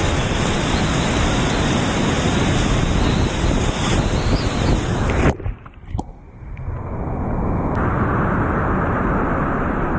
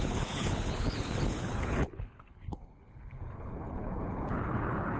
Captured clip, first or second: first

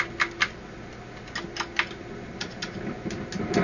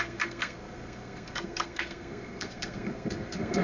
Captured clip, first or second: first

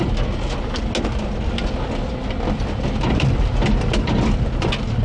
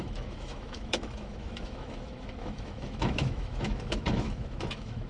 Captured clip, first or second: first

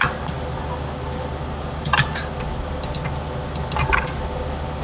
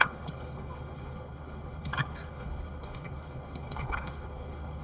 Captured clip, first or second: first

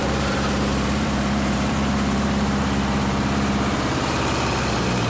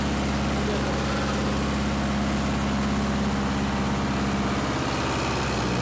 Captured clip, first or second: second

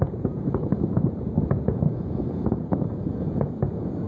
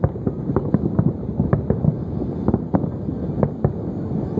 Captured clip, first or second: second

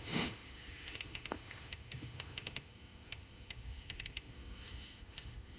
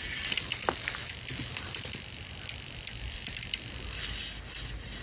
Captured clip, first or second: second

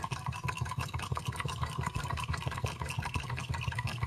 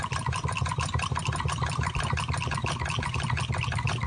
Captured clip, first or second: second